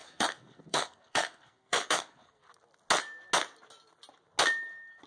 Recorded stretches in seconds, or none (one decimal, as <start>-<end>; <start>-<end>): 2.4-5.1